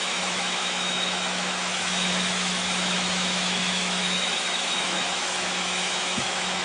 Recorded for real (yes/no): no